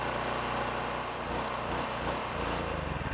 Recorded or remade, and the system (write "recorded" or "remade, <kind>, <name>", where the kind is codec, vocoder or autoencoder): recorded